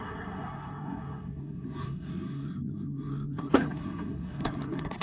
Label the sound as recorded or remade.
remade